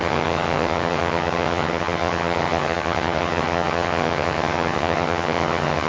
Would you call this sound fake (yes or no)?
yes